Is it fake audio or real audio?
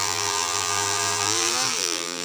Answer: fake